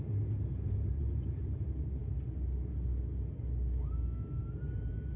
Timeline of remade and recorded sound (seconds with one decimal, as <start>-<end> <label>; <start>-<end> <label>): 0.0-2.0 remade; 2.0-4.4 recorded; 4.4-5.2 remade